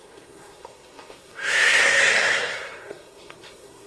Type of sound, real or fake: fake